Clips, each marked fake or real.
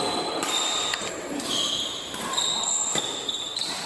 real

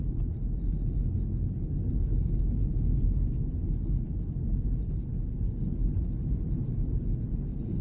real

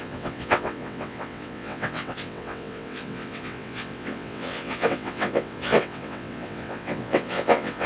fake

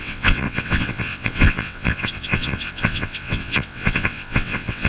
fake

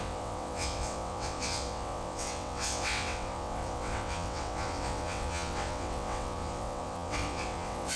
fake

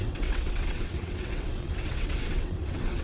fake